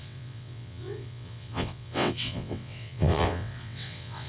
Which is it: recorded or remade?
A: remade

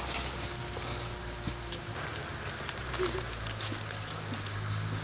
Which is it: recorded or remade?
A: recorded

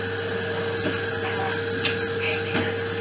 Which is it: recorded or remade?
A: recorded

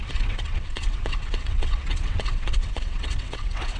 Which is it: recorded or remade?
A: remade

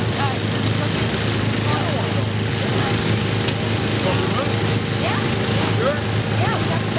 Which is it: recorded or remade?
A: recorded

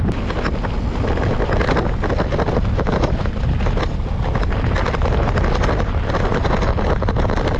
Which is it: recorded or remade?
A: recorded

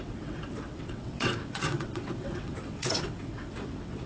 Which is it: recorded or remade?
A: remade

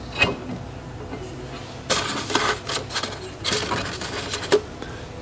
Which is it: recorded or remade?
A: recorded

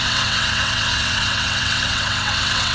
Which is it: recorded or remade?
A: remade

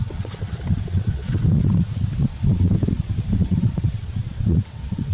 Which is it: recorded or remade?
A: remade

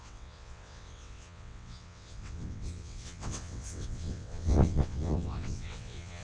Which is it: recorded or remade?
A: remade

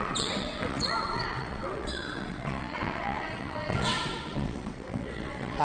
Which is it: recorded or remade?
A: remade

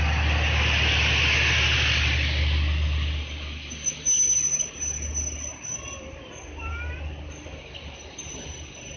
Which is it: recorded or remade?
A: recorded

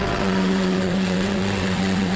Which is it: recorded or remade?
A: remade